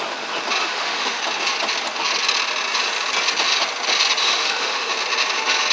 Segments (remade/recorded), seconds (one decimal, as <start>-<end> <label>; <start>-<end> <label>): 0.0-0.6 recorded; 0.6-1.2 remade; 1.2-4.2 recorded; 4.2-4.9 remade; 4.9-5.7 recorded